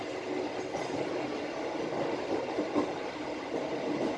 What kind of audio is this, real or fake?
real